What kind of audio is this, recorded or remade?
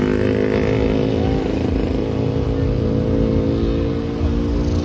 recorded